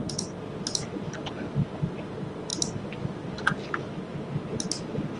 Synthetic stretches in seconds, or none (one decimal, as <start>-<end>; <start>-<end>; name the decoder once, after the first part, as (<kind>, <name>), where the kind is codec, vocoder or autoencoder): none

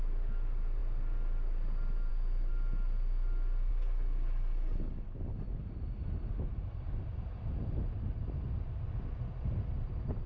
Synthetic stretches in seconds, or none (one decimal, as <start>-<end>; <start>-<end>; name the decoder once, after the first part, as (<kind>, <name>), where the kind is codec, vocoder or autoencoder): none